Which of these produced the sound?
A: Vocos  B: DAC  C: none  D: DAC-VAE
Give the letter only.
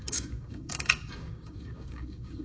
B